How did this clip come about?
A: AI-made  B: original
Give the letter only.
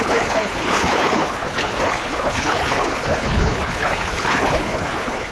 A